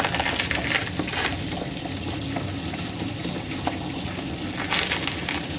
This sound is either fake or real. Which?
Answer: real